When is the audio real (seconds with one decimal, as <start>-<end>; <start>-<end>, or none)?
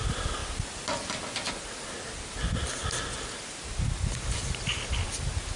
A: 0.0-5.6